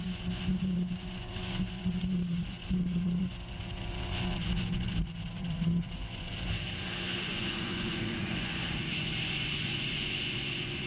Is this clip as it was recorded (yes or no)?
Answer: no